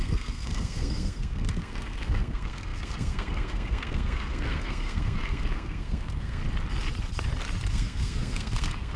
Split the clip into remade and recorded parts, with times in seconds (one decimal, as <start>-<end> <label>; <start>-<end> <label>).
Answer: 0.0-6.4 remade; 6.4-7.7 recorded; 7.7-9.0 remade